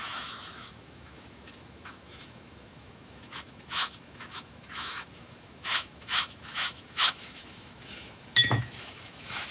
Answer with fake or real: fake